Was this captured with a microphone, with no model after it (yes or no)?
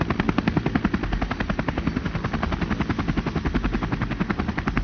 yes